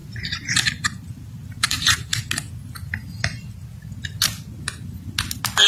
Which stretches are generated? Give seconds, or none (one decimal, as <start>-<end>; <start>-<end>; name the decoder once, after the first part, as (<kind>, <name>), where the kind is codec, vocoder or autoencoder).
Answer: 0.0-2.1 (vocoder, BigVGAN v2)